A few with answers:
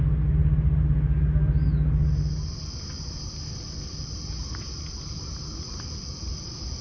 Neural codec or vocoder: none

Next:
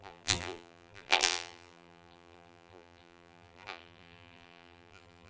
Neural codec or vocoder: vocoder, BigVGAN v2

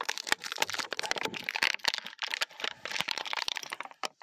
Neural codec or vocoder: vocoder, BigVGAN v2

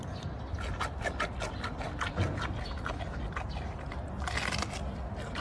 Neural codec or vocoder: none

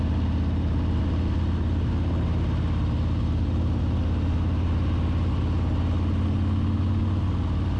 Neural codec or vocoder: none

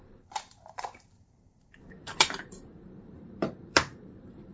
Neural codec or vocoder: vocoder, BigVGAN v2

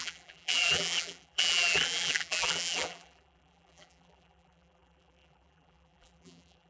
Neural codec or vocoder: vocoder, BigVGAN v2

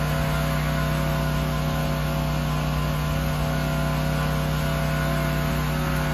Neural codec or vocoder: none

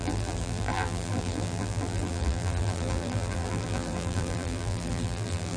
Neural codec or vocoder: vocoder, BigVGAN v2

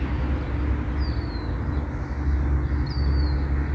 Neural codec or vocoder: none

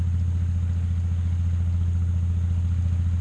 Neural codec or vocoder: none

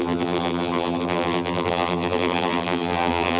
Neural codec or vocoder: vocoder, BigVGAN v2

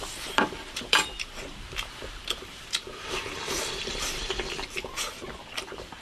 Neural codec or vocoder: vocoder, BigVGAN v2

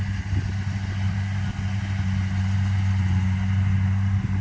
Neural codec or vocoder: none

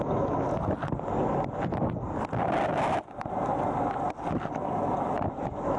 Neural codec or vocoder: none